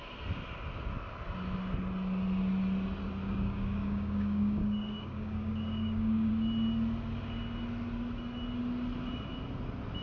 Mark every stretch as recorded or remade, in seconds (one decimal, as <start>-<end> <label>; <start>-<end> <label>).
0.0-3.2 recorded; 3.2-6.3 remade; 6.3-10.0 recorded

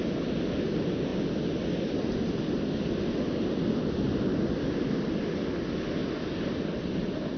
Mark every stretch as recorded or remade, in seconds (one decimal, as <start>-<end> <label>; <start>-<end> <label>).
0.0-7.4 recorded